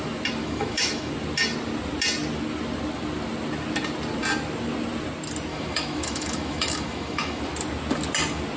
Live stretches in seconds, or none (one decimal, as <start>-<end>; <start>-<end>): 0.0-0.4; 1.1-5.5; 7.4-8.6